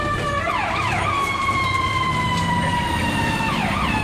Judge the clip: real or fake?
fake